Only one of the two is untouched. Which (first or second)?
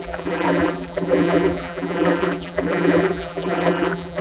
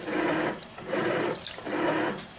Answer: second